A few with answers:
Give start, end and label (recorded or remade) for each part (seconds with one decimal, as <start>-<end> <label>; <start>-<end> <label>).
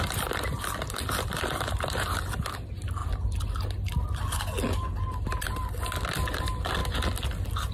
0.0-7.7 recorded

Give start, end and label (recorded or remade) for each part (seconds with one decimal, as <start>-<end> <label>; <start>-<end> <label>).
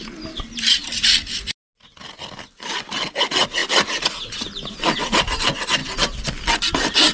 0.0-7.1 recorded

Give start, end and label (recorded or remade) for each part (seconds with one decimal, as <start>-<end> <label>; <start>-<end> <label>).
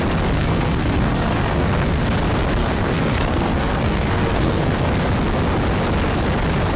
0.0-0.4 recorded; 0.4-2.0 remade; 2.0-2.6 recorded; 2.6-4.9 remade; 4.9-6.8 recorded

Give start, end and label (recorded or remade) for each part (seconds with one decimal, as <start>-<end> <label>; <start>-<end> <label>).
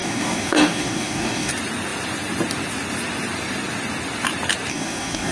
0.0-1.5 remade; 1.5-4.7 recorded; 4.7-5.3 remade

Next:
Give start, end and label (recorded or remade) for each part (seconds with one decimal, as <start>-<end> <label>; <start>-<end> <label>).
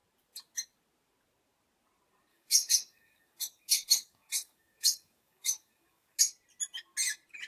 0.0-2.3 recorded; 2.3-6.2 remade; 6.2-7.5 recorded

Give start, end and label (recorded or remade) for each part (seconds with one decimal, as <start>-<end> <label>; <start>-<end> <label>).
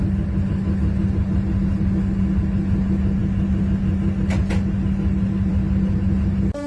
0.0-6.7 recorded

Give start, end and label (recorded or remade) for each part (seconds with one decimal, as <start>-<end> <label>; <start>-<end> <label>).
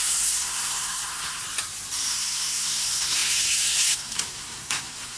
0.0-1.4 remade; 1.4-2.1 recorded; 2.1-5.2 remade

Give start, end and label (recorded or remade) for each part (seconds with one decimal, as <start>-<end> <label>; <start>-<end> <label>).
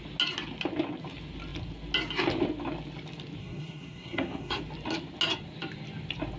0.0-3.4 recorded; 3.4-4.6 remade; 4.6-6.4 recorded